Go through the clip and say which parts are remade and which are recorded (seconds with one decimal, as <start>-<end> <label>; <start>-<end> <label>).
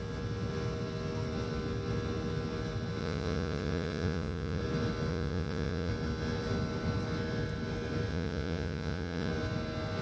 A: 0.0-3.0 recorded; 3.0-4.6 remade; 4.6-5.1 recorded; 5.1-5.9 remade; 5.9-8.1 recorded; 8.1-9.3 remade; 9.3-10.0 recorded